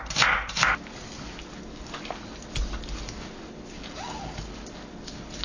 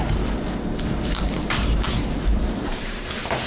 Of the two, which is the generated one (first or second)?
second